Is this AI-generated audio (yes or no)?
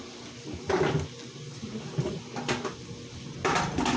no